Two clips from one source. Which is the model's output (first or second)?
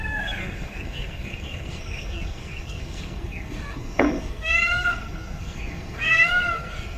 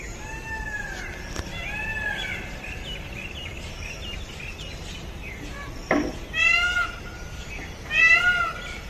first